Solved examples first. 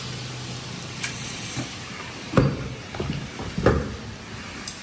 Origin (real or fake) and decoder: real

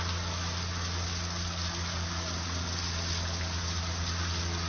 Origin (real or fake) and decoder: real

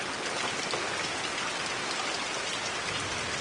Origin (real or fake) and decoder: real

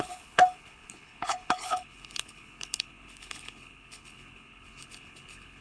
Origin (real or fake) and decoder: fake, codec, HILCodec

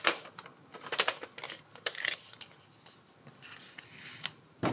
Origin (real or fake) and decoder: real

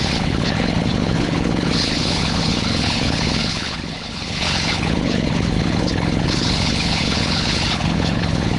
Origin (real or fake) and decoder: fake, codec, HILCodec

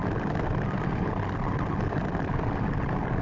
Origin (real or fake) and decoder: real